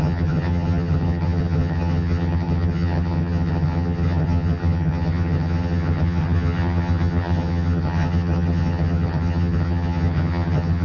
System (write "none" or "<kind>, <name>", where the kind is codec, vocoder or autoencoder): vocoder, HiFi-GAN